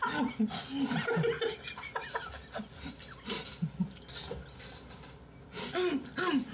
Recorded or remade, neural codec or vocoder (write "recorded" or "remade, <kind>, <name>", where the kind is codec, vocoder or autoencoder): recorded